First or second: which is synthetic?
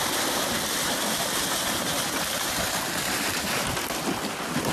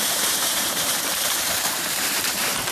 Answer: second